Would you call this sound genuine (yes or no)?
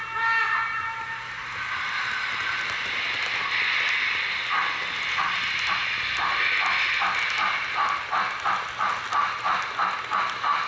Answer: yes